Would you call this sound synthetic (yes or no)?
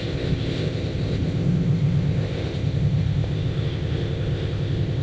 yes